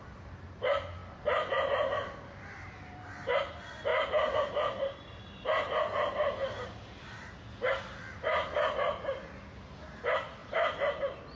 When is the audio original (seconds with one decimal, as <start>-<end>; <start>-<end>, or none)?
0.0-1.0; 3.2-3.9; 7.0-10.4; 11.0-11.4